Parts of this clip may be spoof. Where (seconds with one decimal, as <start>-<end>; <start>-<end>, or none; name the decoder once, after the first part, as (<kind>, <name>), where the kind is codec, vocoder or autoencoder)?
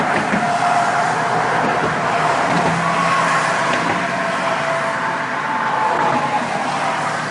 none